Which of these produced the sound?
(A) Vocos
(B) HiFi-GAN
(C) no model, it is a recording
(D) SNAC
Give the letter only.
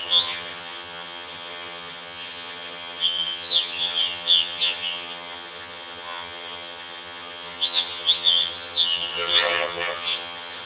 B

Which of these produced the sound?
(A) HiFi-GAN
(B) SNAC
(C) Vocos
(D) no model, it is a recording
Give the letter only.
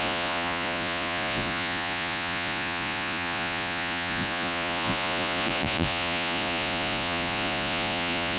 C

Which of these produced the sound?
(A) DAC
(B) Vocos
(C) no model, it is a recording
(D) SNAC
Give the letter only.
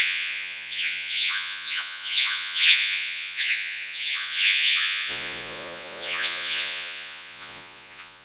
B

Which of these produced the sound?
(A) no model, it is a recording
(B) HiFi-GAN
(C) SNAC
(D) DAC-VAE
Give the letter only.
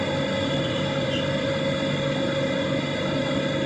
A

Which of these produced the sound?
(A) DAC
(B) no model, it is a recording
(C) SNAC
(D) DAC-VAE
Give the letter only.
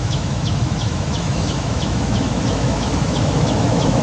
D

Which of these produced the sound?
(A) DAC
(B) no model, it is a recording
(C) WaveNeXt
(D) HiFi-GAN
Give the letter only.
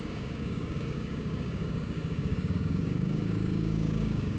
A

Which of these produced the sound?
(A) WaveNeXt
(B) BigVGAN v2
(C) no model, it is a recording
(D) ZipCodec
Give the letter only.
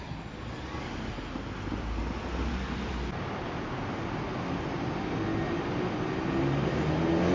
C